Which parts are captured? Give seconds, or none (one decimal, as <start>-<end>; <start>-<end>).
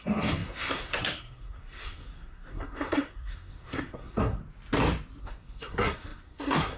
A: 4.4-5.2